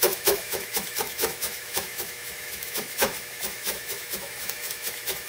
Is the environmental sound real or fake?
fake